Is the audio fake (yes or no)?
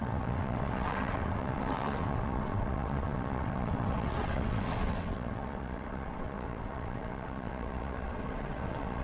yes